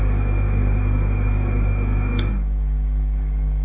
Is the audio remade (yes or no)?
yes